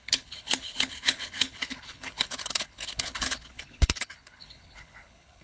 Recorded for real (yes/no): no